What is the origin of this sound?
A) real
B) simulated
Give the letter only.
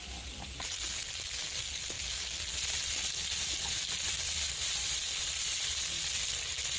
A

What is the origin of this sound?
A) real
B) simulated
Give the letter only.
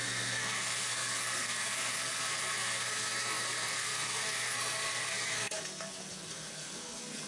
B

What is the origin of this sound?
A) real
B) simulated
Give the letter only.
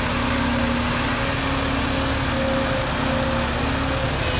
A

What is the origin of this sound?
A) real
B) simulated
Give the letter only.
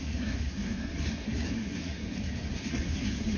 B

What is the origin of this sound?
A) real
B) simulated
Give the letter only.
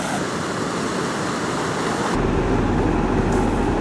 A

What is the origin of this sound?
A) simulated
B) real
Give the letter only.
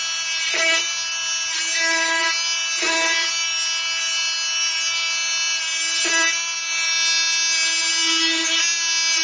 B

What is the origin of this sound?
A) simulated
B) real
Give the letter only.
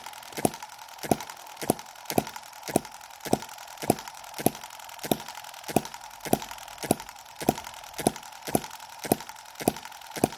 B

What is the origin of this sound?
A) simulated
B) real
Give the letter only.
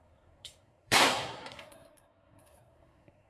A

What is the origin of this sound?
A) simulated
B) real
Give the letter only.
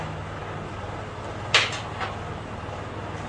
B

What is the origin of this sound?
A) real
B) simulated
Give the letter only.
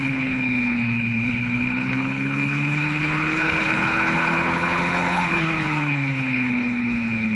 B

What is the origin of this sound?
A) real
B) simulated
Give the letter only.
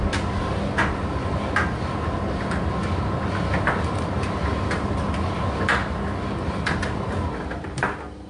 A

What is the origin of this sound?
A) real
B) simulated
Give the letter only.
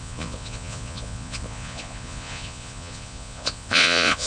B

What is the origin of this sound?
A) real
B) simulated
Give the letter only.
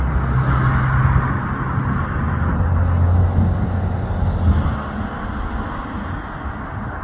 A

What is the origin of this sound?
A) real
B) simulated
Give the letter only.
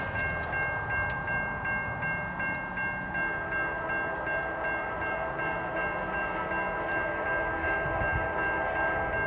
A